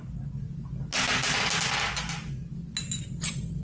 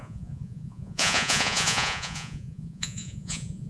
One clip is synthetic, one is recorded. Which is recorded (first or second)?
first